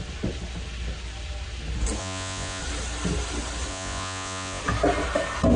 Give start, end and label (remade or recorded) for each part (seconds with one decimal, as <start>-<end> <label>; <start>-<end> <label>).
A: 0.0-2.0 recorded; 2.0-2.6 remade; 2.6-3.7 recorded; 3.7-4.6 remade; 4.6-5.6 recorded